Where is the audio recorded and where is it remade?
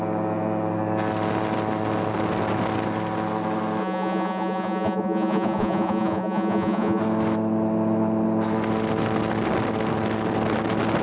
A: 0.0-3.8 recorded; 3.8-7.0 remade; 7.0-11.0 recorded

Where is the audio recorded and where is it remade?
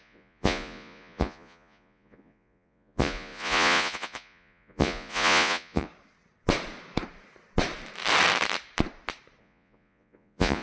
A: 0.0-5.9 remade; 5.9-9.4 recorded; 9.4-10.6 remade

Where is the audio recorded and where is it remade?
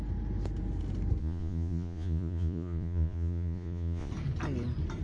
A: 0.0-1.2 recorded; 1.2-4.1 remade; 4.1-5.0 recorded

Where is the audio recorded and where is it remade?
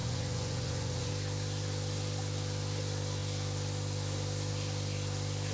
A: 0.0-1.1 remade; 1.1-5.5 recorded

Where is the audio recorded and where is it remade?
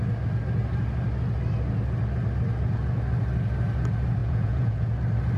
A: 0.0-4.2 recorded; 4.2-4.9 remade; 4.9-5.4 recorded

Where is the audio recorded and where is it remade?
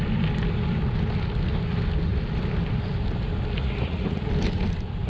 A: 0.0-3.6 recorded; 3.6-4.3 remade; 4.3-5.1 recorded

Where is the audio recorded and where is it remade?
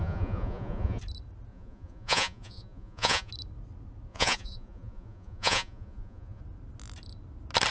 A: 0.0-1.0 remade; 1.0-1.5 recorded; 1.5-3.3 remade; 3.3-4.1 recorded; 4.1-6.4 remade; 6.4-7.7 recorded